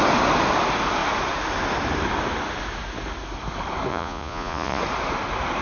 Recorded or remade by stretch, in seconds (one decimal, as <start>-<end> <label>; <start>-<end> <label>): 0.0-3.9 recorded; 3.9-4.8 remade; 4.8-5.6 recorded